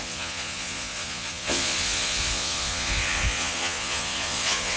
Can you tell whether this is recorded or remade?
remade